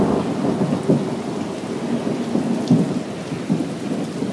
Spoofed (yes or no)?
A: no